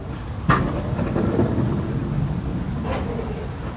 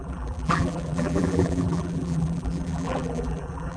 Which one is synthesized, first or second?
second